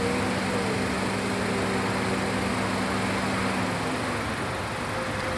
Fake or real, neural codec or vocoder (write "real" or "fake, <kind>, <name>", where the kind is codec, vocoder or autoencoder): real